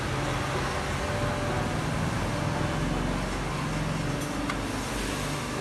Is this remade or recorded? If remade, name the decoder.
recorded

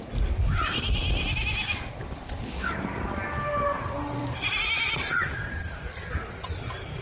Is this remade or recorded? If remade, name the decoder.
remade, vocoder, BigVGAN v2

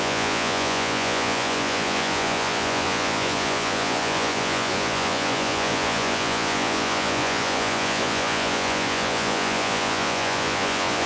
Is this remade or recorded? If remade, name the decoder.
remade, vocoder, Vocos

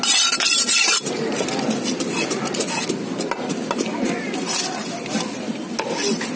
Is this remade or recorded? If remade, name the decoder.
recorded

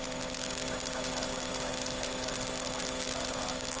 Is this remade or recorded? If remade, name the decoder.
recorded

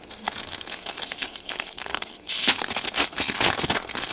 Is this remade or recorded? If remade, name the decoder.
remade, codec, SNAC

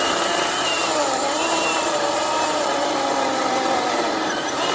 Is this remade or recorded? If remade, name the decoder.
remade, vocoder, BigVGAN v2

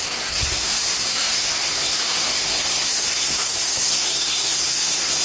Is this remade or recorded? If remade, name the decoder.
remade, codec, SNAC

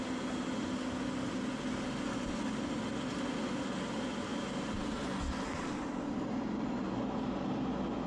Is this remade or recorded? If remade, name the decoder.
recorded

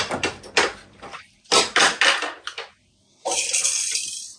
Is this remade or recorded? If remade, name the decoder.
recorded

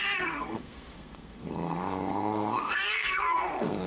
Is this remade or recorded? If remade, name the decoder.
remade, codec, SNAC